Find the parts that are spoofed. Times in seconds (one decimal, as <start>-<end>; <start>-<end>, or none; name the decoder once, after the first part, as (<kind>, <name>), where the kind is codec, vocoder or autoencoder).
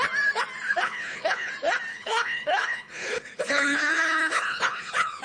0.7-1.5 (codec, HILCodec); 1.9-5.2